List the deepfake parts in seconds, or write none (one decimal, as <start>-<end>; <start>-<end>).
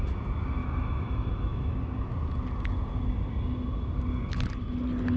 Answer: 0.6-1.8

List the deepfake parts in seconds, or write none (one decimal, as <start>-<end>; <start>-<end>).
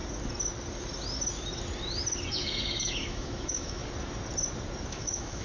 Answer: 2.3-3.8; 4.9-5.4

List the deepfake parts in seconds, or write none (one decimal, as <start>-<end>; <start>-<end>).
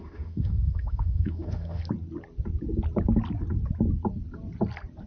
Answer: 0.0-1.8